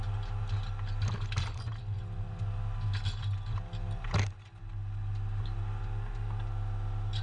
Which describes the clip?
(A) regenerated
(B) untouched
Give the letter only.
B